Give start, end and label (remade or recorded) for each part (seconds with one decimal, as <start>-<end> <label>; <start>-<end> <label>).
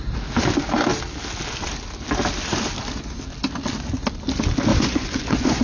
0.0-4.7 recorded; 4.7-5.6 remade